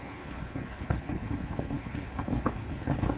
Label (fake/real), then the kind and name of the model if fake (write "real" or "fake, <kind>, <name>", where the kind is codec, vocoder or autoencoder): fake, codec, HILCodec